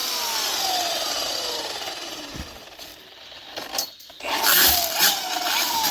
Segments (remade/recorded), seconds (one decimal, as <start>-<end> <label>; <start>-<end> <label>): 0.0-5.9 recorded